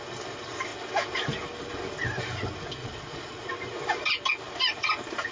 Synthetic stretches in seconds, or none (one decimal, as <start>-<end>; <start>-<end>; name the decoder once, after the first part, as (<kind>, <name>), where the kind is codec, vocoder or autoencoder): 2.8-3.5 (vocoder, Vocos)